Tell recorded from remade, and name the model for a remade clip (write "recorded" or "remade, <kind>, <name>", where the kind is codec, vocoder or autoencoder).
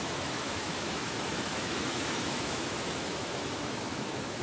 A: remade, autoencoder, DAC-VAE